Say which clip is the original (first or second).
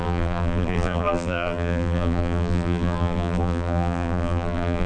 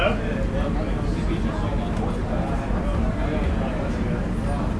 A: second